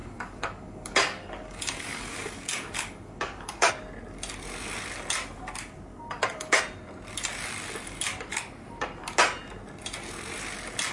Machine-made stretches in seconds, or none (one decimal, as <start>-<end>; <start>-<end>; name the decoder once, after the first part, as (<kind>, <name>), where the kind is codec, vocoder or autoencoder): 0.0-3.7 (codec, DAC); 5.9-6.6

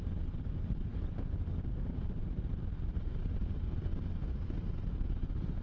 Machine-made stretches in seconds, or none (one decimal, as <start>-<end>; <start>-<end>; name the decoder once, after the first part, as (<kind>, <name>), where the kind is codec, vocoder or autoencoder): 0.9-1.6 (codec, DAC)